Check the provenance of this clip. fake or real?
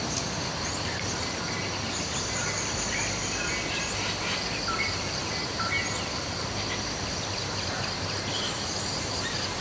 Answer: real